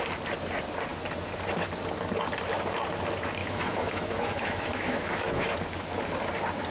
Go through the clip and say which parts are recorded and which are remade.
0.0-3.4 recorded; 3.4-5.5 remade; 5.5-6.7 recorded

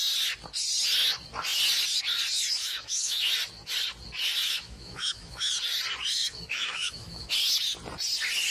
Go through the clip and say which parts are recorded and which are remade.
0.0-2.6 recorded; 2.6-3.2 remade; 3.2-4.4 recorded; 4.4-5.5 remade; 5.5-6.1 recorded; 6.1-7.3 remade; 7.3-8.5 recorded

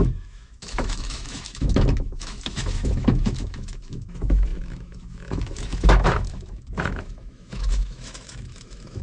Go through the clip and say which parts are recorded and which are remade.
0.0-9.0 remade

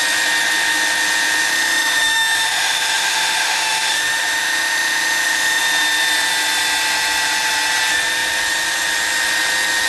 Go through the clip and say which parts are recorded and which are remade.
0.0-1.5 recorded; 1.5-5.6 remade; 5.6-9.9 recorded

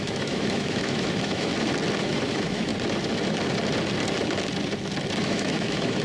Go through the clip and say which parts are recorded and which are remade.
0.0-1.5 remade; 1.5-2.0 recorded; 2.0-2.7 remade; 2.7-5.2 recorded; 5.2-6.0 remade

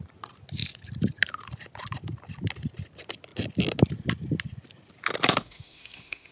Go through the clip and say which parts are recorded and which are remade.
0.0-5.4 recorded; 5.4-6.3 remade

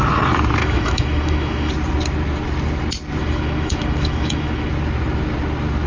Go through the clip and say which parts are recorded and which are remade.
0.0-0.6 recorded; 0.6-1.7 remade; 1.7-3.2 recorded; 3.2-4.7 remade; 4.7-5.9 recorded

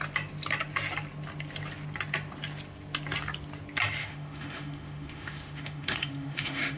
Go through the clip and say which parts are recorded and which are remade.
0.0-4.0 recorded; 4.0-6.8 remade